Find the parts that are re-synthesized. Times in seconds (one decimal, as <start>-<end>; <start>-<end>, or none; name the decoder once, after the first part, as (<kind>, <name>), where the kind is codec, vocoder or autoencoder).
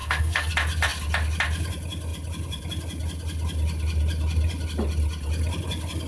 0.0-0.5 (codec, SNAC)